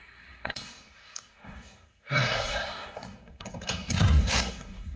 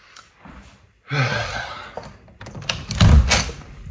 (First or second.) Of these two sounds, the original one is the second